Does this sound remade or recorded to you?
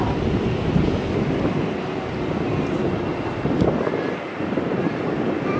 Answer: remade